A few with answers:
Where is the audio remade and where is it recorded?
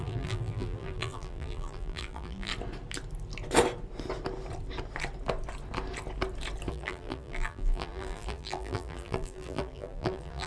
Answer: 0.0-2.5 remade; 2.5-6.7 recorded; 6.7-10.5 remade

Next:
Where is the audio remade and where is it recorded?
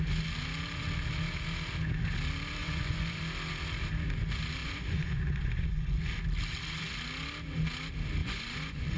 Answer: 0.0-2.6 recorded; 2.6-3.2 remade; 3.2-4.6 recorded; 4.6-6.1 remade; 6.1-8.2 recorded; 8.2-9.0 remade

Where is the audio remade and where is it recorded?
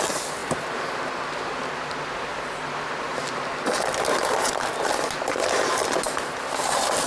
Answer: 0.0-7.1 recorded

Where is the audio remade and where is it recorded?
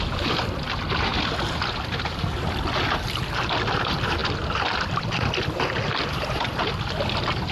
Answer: 0.0-7.5 recorded